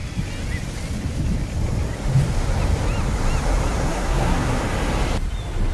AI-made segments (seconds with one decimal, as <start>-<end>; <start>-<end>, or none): 3.9-4.6